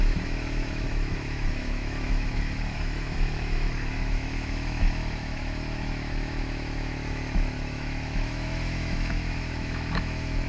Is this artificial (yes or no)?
yes